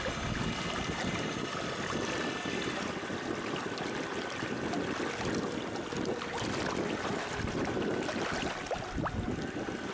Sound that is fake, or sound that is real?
real